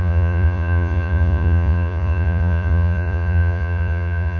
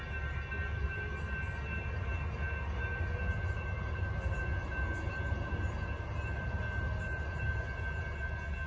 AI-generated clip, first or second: first